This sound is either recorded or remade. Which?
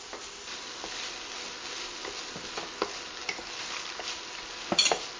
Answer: recorded